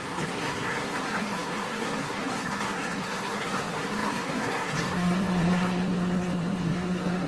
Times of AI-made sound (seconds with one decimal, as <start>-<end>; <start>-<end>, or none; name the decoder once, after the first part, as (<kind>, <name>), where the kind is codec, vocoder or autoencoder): 0.0-7.3 (codec, SNAC)